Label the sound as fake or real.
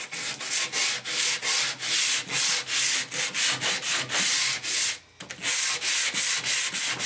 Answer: real